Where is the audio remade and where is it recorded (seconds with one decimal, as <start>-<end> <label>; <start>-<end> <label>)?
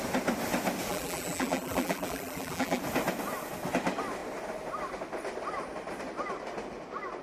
0.0-0.9 recorded; 0.9-2.8 remade; 2.8-7.2 recorded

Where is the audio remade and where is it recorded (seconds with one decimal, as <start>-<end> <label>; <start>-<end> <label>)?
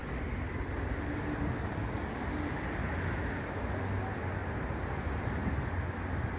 0.0-4.4 recorded; 4.4-4.9 remade; 4.9-6.4 recorded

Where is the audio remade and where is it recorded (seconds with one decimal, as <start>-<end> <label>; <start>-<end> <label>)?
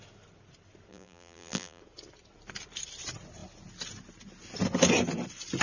0.0-0.9 recorded; 0.9-1.8 remade; 1.8-5.6 recorded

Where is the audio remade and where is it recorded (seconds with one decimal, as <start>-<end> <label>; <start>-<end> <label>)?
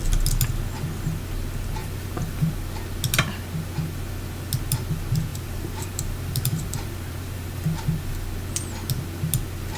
0.0-1.8 recorded; 1.8-2.5 remade; 2.5-5.3 recorded; 5.3-8.1 remade; 8.1-9.8 recorded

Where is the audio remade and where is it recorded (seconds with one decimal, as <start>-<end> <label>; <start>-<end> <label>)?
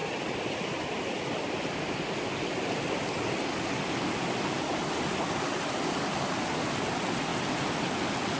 0.0-8.4 recorded